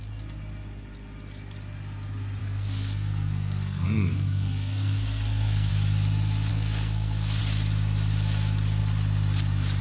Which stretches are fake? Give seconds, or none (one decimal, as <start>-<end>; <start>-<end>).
2.4-5.7; 6.5-7.4